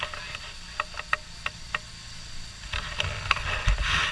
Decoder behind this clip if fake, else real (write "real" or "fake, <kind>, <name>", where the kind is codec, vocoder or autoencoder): real